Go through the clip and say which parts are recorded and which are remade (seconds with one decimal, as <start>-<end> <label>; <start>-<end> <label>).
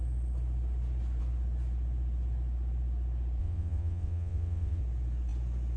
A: 0.0-3.4 recorded; 3.4-4.8 remade; 4.8-5.8 recorded